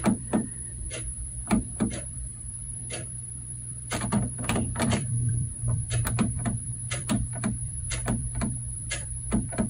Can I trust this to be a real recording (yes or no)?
no